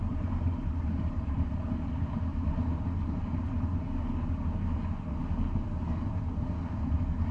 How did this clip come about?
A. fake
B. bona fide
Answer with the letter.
B